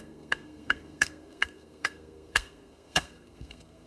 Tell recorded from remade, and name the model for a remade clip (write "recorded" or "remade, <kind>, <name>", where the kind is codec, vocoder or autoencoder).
remade, codec, SNAC